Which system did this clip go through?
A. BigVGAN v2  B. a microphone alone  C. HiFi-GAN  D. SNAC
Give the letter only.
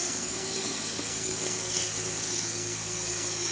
D